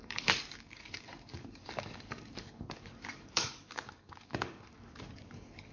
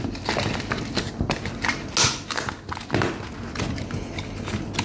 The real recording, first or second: second